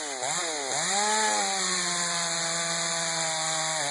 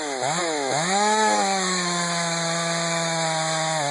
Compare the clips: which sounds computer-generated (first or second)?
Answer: second